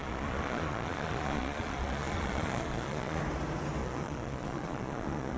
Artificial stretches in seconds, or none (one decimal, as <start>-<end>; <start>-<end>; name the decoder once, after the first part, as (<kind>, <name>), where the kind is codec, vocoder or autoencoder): 0.0-3.2 (vocoder, Vocos); 3.8-5.4

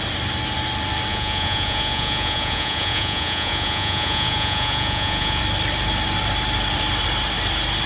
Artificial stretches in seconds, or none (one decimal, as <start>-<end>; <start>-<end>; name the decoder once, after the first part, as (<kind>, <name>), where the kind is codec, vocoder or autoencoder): 1.1-5.4 (vocoder, Vocos)